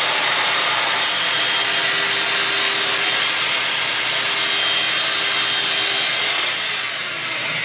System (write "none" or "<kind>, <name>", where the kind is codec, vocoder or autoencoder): none